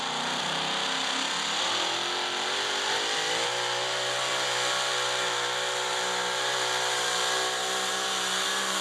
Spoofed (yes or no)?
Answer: no